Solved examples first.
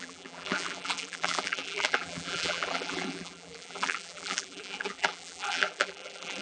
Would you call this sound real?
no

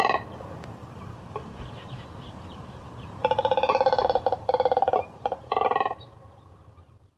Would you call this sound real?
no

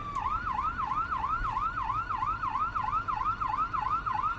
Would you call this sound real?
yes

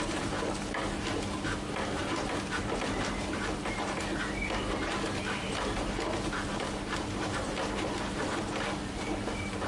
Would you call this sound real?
no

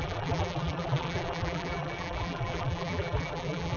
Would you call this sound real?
no